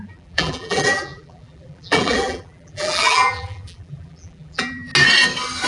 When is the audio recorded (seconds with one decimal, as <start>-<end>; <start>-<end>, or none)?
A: 4.9-5.7